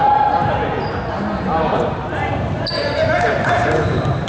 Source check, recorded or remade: remade